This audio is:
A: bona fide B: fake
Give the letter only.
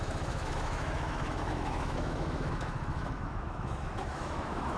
B